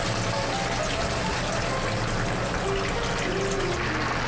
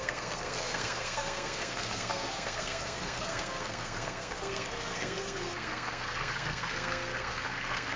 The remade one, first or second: second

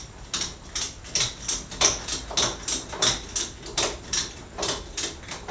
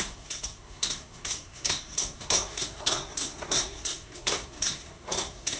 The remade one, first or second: second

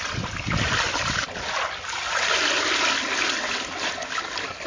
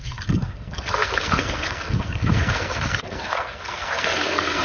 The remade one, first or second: second